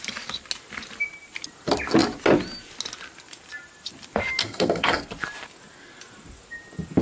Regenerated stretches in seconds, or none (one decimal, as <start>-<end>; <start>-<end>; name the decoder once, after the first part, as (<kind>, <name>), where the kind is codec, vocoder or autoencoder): 4.4-5.1 (codec, SNAC)